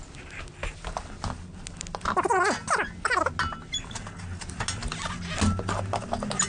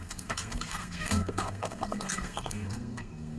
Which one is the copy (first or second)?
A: second